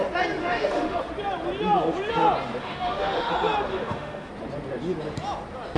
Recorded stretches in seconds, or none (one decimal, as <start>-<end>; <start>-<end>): 0.0-0.4; 1.0-2.6; 3.3-3.7; 4.3-5.8